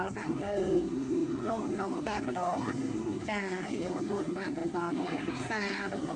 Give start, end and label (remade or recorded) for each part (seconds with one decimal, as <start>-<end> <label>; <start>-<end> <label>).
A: 0.0-6.2 remade